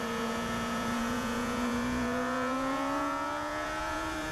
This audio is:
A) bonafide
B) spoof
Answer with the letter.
B